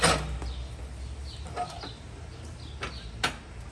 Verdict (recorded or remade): recorded